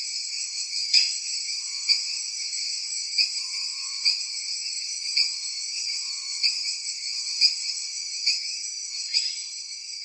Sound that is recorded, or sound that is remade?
remade